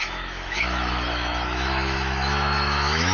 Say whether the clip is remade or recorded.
remade